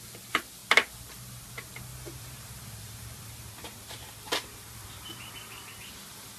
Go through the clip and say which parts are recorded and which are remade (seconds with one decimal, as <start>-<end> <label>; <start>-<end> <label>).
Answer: 0.0-1.9 recorded; 1.9-5.7 remade; 5.7-6.4 recorded